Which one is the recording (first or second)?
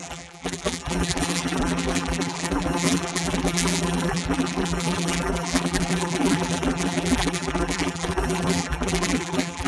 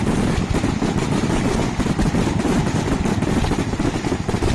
second